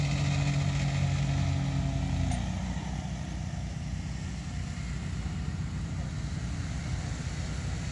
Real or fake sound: real